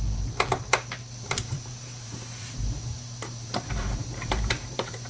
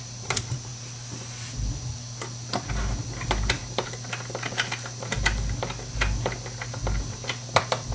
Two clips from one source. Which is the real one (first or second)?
second